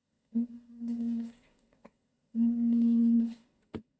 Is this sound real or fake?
fake